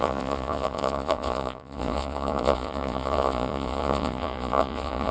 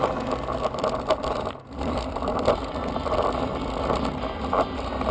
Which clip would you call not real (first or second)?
first